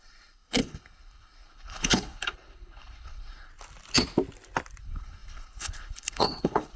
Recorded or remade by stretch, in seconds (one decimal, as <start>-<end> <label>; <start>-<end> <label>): 0.0-3.5 remade; 3.5-4.8 recorded; 4.8-6.8 remade

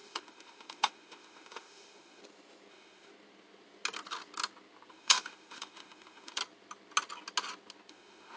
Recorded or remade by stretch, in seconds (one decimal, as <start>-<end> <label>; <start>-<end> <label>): 0.0-2.2 remade; 2.2-2.7 recorded; 2.7-3.1 remade; 3.1-4.9 recorded; 4.9-6.4 remade; 6.4-7.9 recorded; 7.9-8.4 remade

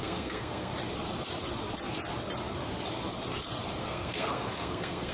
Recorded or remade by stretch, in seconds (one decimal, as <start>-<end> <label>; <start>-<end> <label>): 0.0-0.7 remade; 0.7-3.8 recorded; 3.8-5.1 remade

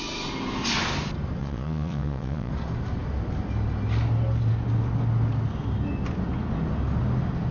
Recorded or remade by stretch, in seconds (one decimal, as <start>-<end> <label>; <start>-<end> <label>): 0.0-1.4 recorded; 1.4-2.5 remade; 2.5-7.5 recorded

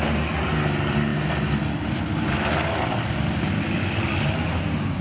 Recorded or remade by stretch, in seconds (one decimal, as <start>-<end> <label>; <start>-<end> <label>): 0.0-5.0 recorded

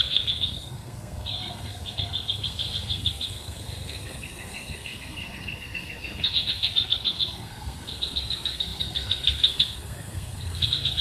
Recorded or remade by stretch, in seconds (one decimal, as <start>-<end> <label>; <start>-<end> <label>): 0.0-11.0 remade